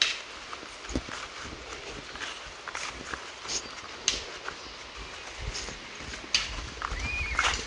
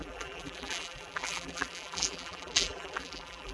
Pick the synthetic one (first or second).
second